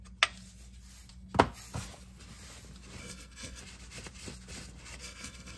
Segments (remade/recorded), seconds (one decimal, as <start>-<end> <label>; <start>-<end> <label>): 0.0-3.0 recorded; 3.0-3.6 remade; 3.6-5.0 recorded; 5.0-5.6 remade